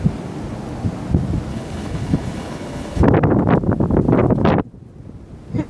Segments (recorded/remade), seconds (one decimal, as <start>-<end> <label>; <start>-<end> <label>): 0.0-1.5 recorded; 1.5-3.0 remade; 3.0-5.7 recorded